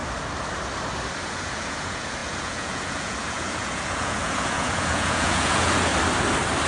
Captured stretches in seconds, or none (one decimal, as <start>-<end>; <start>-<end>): 0.0-1.2; 5.9-6.7